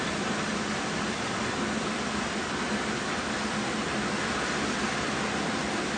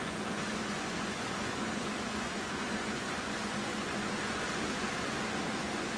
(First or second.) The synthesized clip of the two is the second